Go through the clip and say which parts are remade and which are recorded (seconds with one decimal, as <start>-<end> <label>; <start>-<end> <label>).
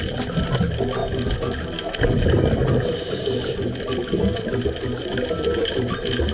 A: 0.0-6.3 recorded